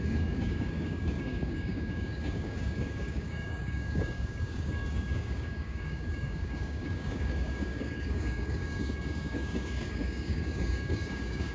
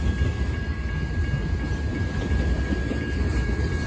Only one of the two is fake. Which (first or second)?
first